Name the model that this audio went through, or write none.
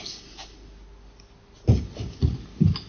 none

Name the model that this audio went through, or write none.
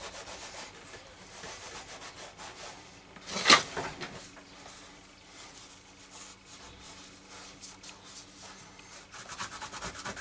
none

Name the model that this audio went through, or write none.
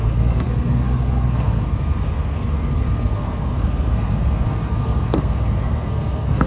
codec, SNAC